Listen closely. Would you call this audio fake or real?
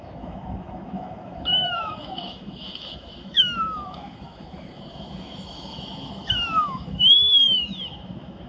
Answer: fake